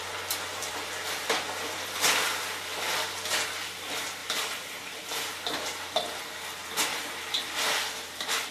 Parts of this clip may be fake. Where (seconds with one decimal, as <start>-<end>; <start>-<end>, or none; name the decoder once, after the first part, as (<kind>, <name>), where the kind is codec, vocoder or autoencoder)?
0.6-3.5 (vocoder, BigVGAN v2); 4.2-5.4; 6.9-8.5